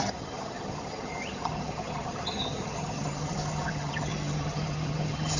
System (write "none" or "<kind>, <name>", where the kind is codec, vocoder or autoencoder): vocoder, HiFi-GAN